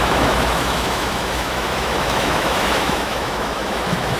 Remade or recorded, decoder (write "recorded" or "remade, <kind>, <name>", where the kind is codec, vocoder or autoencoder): remade, autoencoder, DAC-VAE